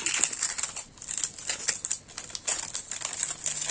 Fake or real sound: real